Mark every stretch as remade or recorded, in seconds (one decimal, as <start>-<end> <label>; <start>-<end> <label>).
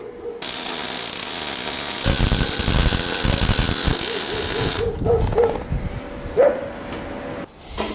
0.0-7.9 recorded